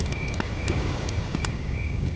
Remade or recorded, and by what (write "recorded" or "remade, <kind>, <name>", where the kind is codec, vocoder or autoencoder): remade, codec, DAC